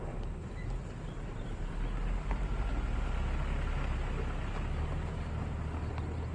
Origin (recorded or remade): recorded